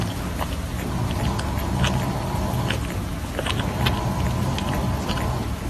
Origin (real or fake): real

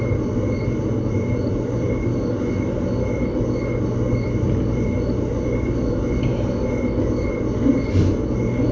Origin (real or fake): real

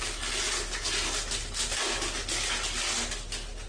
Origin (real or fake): real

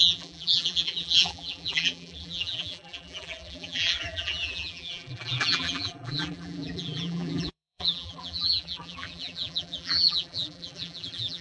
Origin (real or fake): fake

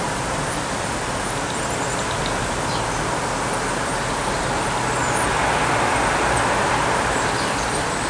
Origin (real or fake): real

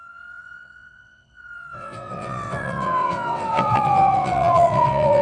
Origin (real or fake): fake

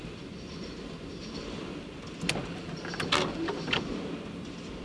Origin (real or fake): real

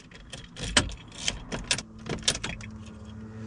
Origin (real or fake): real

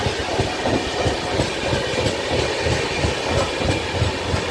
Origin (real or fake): real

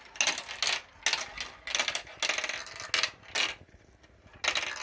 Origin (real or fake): real